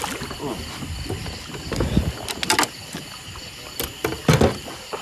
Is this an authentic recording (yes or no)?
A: yes